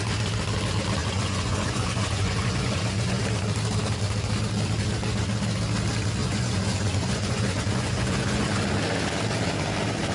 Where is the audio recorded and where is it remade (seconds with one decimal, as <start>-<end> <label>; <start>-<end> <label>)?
0.0-1.0 recorded; 1.0-3.2 remade; 3.2-6.2 recorded; 6.2-8.6 remade; 8.6-10.1 recorded